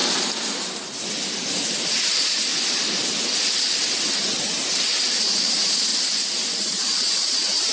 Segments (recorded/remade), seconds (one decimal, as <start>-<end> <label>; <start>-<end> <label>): 0.0-1.5 recorded; 1.5-2.5 remade; 2.5-5.2 recorded; 5.2-5.9 remade; 5.9-6.6 recorded; 6.6-7.7 remade